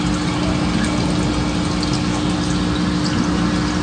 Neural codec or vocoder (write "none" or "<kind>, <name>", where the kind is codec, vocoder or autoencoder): none